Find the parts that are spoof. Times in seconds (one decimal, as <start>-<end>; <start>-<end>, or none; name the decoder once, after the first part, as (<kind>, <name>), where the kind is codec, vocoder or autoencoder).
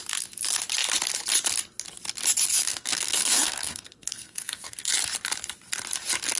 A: 2.5-4.9 (codec, SNAC)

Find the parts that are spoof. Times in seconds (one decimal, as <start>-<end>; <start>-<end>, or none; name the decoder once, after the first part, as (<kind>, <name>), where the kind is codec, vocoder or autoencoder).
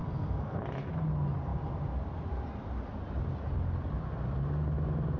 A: 0.0-0.6 (codec, SNAC)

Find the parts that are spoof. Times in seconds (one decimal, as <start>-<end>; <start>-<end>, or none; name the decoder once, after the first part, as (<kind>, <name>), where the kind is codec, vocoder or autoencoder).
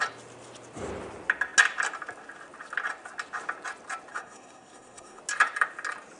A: 4.1-5.2 (codec, SNAC)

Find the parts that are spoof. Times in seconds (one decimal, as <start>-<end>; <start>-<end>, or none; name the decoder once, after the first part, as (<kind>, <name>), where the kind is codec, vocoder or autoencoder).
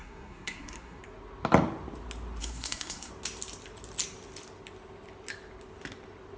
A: 0.0-1.0 (codec, SNAC); 2.4-3.1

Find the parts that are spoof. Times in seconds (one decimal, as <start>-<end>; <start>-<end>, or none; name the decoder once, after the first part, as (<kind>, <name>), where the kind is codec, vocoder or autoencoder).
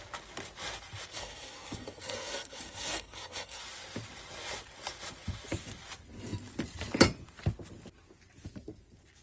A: 1.1-3.6 (codec, SNAC)